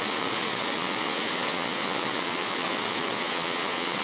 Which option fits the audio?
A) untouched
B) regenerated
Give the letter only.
B